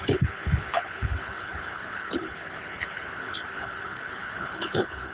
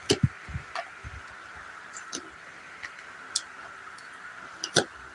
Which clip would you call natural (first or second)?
second